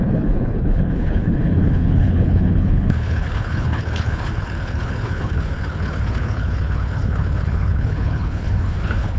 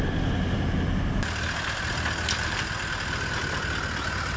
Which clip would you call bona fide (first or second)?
second